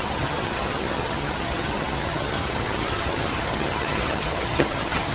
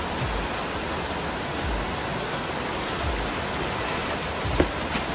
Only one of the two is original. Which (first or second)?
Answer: second